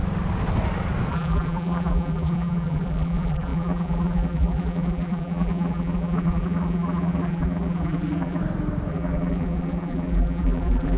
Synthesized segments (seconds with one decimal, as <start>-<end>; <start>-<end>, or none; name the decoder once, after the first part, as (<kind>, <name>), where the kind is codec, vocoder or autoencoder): 1.1-8.4 (vocoder, BigVGAN v2); 8.9-11.0